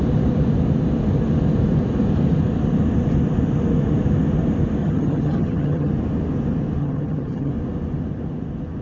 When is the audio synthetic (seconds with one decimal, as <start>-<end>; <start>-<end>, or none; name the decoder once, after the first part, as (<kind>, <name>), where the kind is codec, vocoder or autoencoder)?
4.8-5.9 (vocoder, HiFi-GAN); 6.8-7.5